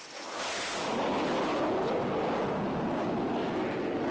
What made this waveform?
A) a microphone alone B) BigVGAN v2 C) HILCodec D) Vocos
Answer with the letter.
A